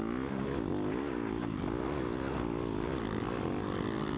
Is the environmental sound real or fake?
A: real